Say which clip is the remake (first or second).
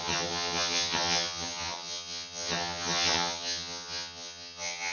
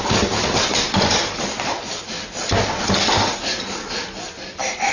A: first